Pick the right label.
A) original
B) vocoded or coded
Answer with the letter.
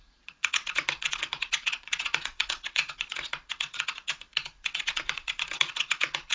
B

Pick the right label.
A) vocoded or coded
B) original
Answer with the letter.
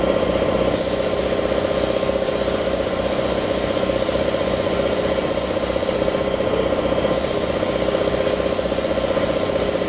A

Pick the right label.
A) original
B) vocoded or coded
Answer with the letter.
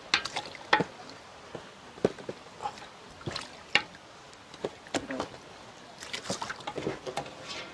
A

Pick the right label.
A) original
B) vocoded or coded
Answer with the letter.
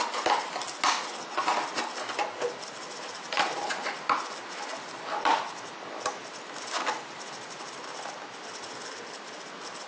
A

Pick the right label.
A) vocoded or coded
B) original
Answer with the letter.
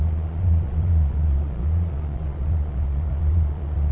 A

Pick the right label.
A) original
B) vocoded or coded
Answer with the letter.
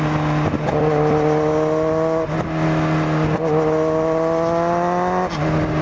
A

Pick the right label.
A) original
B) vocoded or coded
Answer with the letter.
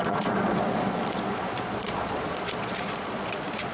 B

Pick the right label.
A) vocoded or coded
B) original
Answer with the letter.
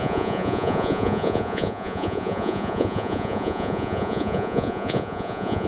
A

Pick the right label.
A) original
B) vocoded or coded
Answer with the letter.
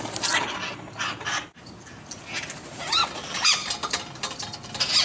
A